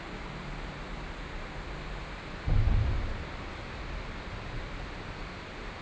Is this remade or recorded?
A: recorded